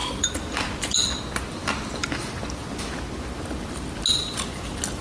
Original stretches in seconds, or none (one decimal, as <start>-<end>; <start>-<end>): 1.2-1.6; 2.1-5.0